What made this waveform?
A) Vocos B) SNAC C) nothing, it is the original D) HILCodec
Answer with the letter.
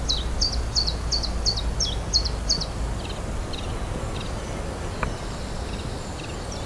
C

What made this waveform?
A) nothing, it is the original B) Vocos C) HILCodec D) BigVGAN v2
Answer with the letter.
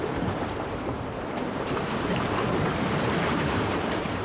D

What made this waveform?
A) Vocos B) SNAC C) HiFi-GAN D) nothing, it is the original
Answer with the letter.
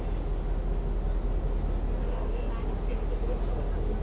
D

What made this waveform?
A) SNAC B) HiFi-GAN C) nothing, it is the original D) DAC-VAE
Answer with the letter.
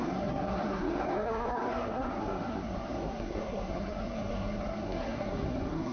A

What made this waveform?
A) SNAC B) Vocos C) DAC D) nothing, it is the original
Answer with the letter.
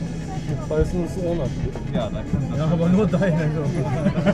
D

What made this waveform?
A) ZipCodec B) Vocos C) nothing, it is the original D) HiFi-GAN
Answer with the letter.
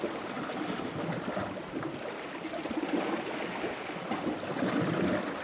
C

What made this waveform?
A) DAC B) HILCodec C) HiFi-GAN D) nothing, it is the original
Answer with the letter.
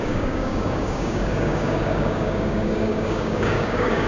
A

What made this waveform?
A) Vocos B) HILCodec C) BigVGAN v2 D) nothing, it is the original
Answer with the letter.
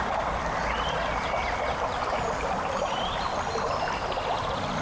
C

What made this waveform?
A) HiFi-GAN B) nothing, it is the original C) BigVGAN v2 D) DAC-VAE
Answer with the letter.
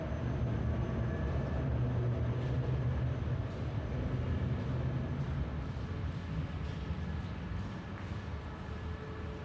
B